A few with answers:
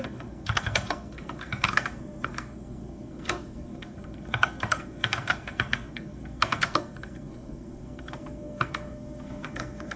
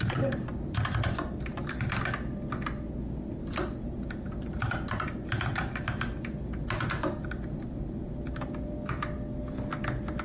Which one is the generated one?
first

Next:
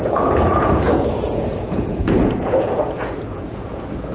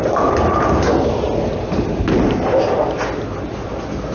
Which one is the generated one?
first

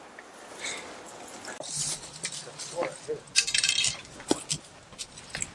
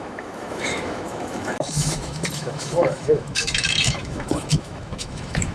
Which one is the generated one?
second